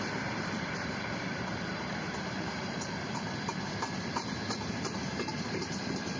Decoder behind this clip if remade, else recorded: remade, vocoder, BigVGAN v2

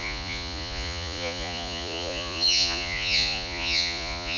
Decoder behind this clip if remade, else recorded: remade, vocoder, Vocos